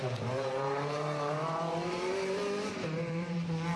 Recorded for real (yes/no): no